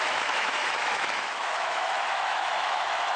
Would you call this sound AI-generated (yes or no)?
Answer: yes